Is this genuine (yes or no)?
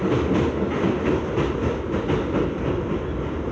yes